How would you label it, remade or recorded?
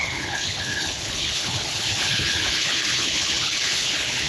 remade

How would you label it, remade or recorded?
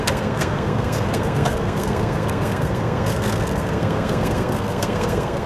remade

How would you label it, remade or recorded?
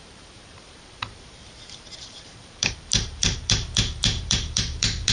remade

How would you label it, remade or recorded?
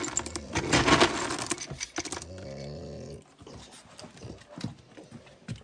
recorded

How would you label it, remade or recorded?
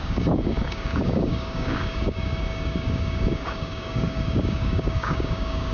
remade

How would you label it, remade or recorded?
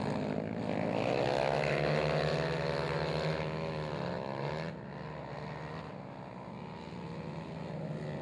recorded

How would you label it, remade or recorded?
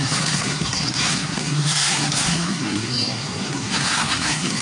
remade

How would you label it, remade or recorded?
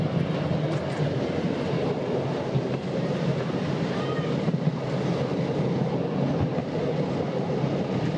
recorded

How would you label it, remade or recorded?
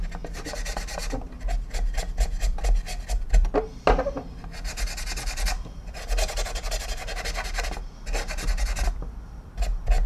recorded